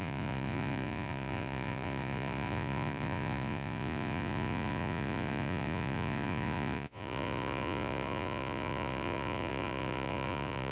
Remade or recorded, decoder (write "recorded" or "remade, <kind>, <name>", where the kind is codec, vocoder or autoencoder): remade, vocoder, Vocos